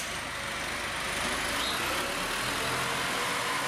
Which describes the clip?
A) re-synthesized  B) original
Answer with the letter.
B